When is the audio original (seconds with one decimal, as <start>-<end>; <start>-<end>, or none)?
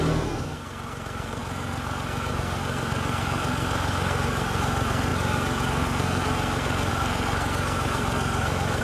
none